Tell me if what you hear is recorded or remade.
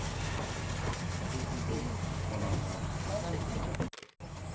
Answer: recorded